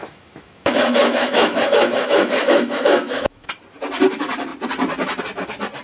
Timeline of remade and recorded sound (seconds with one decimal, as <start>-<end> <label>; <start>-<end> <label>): 0.0-3.5 remade; 3.5-5.8 recorded